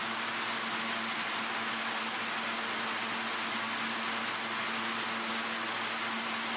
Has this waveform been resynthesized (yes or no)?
no